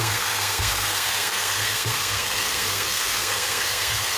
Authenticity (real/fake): fake